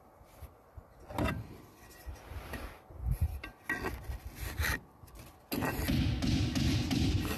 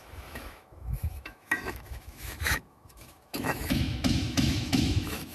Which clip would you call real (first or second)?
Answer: first